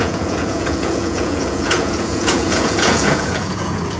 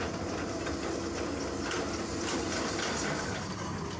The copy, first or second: first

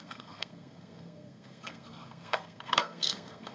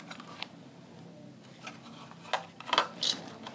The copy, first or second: first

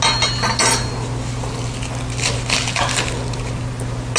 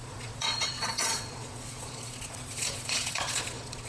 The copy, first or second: second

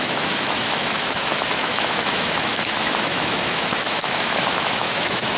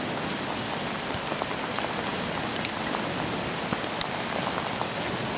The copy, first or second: first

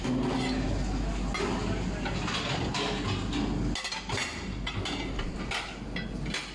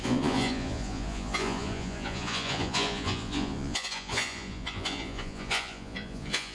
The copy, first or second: second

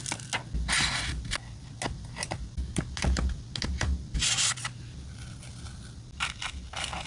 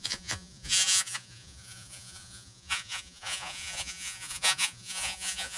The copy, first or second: second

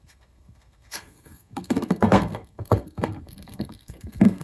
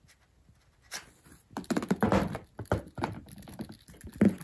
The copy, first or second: first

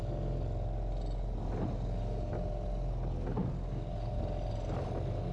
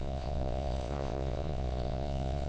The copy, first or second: second